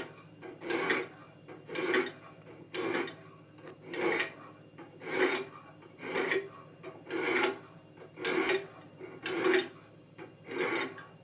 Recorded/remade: recorded